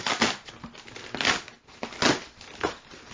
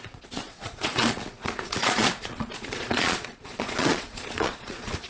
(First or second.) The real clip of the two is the first